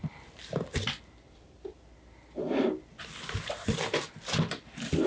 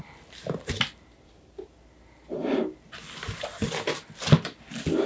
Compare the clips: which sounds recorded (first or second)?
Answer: second